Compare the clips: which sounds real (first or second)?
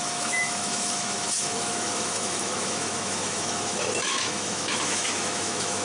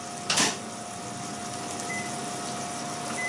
second